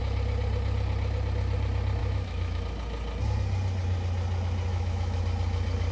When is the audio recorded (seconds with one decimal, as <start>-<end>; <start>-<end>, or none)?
0.0-2.0; 2.6-4.7; 5.2-5.9